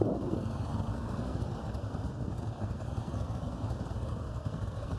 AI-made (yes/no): yes